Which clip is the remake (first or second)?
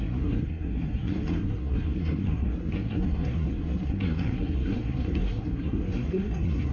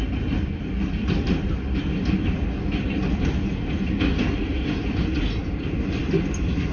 first